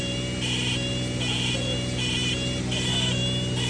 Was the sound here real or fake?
real